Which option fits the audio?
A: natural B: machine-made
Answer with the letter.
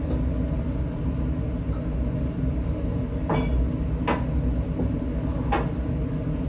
A